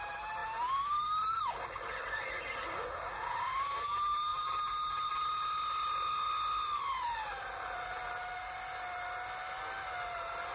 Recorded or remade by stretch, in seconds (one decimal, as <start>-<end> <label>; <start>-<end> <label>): 0.0-4.3 recorded; 4.3-5.1 remade; 5.1-10.5 recorded